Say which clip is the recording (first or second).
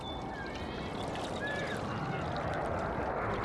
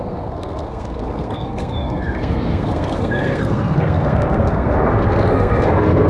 first